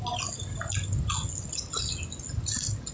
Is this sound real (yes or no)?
yes